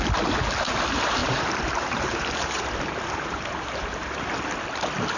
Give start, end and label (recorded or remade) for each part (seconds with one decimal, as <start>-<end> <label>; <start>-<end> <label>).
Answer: 0.0-1.2 recorded; 1.2-4.3 remade; 4.3-5.2 recorded